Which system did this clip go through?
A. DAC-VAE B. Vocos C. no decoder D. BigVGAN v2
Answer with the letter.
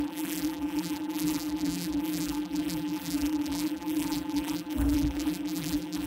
D